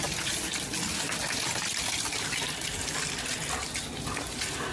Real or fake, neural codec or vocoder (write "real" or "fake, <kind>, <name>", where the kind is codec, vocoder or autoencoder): real